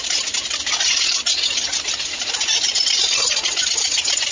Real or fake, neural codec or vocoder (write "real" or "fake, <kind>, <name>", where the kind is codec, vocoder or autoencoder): real